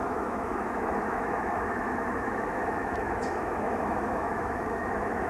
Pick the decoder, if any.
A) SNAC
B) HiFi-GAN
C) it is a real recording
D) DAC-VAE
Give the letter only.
D